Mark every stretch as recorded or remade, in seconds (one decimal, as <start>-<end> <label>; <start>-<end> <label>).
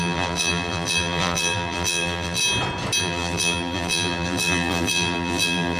0.0-2.4 remade; 2.4-3.0 recorded; 3.0-5.8 remade